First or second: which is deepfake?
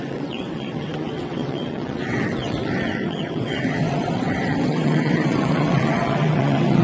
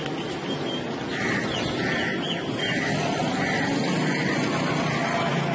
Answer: first